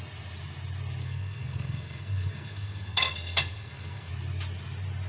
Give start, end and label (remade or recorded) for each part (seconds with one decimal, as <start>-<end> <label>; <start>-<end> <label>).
0.0-1.0 recorded; 1.0-4.1 remade; 4.1-5.1 recorded